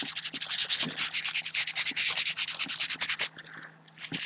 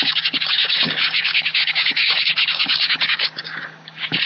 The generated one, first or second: second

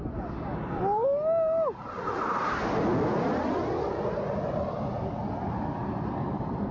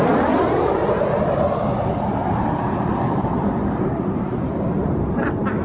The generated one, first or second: second